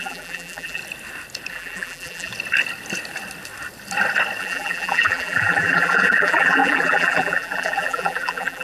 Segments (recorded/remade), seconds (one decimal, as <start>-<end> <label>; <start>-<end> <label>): 0.0-0.8 remade; 0.8-1.5 recorded; 1.5-2.3 remade; 2.3-4.4 recorded; 4.4-8.6 remade